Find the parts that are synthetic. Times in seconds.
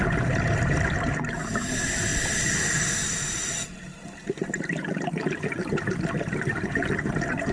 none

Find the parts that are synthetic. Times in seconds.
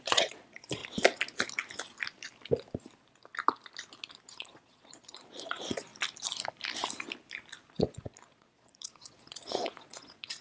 0.0-0.8; 4.2-5.9; 7.7-10.4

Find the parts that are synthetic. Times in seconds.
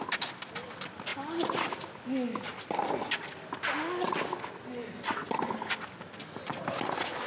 none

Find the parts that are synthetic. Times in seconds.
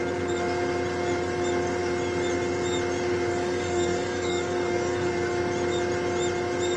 3.3-5.1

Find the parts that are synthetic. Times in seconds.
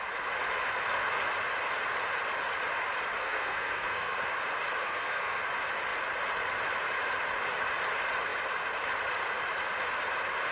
3.2-4.2; 4.8-5.4